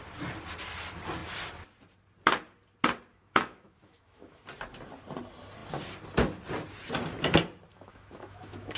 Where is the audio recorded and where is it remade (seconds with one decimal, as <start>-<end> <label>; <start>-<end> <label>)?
0.0-3.1 recorded; 3.1-4.4 remade; 4.4-7.7 recorded; 7.7-8.8 remade